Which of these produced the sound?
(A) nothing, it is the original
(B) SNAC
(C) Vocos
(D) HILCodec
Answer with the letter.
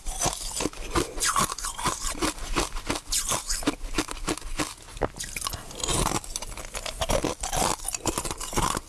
A